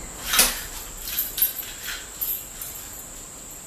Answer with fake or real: real